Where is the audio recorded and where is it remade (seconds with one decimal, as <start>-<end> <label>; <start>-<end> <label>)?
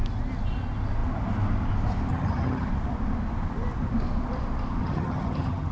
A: 0.0-2.1 recorded; 2.1-2.7 remade; 2.7-4.8 recorded; 4.8-5.7 remade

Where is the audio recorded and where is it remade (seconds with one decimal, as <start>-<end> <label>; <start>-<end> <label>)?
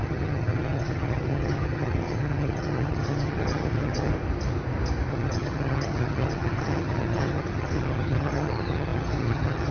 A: 0.0-4.1 remade; 4.1-5.1 recorded; 5.1-9.7 remade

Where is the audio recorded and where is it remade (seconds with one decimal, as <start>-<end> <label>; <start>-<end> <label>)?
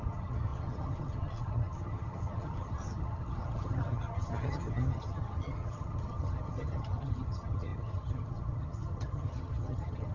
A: 0.0-10.1 remade